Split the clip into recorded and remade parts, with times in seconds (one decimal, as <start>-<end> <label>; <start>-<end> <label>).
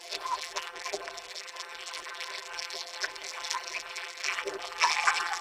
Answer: 0.0-5.4 remade